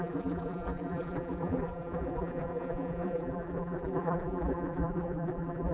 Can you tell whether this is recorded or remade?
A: remade